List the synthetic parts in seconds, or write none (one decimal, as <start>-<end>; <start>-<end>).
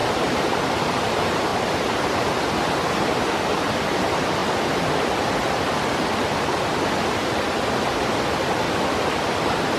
none